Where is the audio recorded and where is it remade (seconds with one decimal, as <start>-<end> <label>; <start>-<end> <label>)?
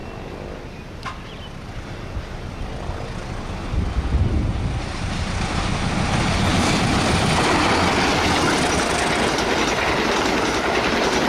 0.0-11.3 recorded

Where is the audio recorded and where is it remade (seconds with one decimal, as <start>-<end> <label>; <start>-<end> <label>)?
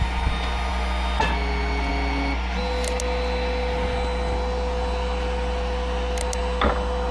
0.0-7.1 recorded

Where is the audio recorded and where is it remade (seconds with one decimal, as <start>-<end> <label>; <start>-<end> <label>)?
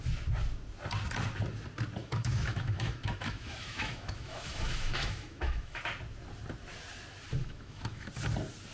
0.0-2.0 recorded; 2.0-5.8 remade; 5.8-7.4 recorded; 7.4-8.1 remade; 8.1-8.7 recorded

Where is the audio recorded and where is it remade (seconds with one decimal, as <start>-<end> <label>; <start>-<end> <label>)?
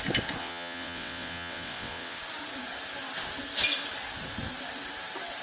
0.0-0.4 recorded; 0.4-2.2 remade; 2.2-5.4 recorded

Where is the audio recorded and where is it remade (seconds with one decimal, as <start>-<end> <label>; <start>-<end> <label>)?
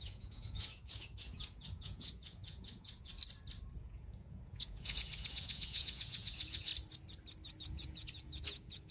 0.0-3.1 remade; 3.1-3.8 recorded; 3.8-6.7 remade; 6.7-7.6 recorded; 7.6-8.9 remade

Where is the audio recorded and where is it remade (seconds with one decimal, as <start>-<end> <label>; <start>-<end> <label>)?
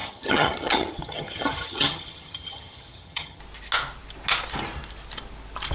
0.0-3.4 remade; 3.4-5.7 recorded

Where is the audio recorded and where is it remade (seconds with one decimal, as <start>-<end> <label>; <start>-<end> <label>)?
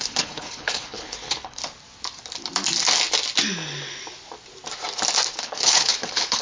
0.0-1.6 remade; 1.6-5.4 recorded; 5.4-6.4 remade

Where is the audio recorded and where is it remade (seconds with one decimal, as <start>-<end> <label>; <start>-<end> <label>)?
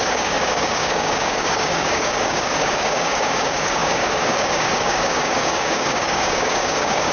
0.0-7.1 remade